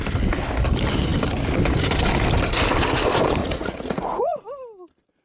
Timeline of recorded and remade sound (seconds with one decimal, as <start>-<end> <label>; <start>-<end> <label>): 0.0-3.4 recorded; 3.4-4.4 remade; 4.4-5.2 recorded